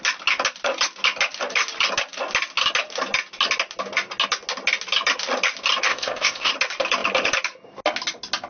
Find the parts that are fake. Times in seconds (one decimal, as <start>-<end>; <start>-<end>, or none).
5.9-6.5